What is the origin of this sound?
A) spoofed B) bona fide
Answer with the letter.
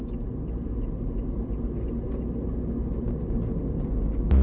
B